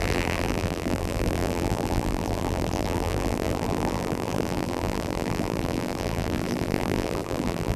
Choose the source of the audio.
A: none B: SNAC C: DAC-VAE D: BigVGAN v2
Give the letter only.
D